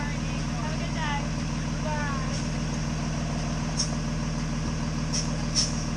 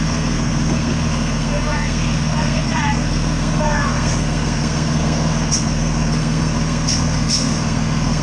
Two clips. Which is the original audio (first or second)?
first